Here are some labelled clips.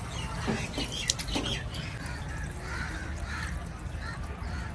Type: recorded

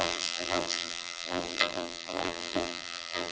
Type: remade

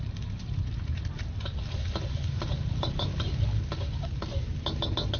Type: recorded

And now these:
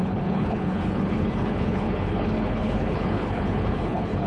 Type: remade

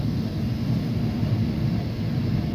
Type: recorded